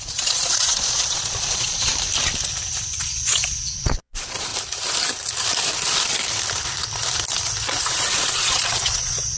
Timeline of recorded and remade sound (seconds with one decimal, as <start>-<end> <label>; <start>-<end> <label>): 0.0-1.9 remade; 1.9-3.0 recorded; 3.0-4.5 remade; 4.5-7.8 recorded; 7.8-9.4 remade